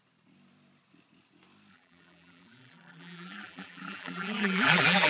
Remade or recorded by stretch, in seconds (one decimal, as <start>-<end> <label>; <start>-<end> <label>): 0.0-1.7 recorded; 1.7-5.1 remade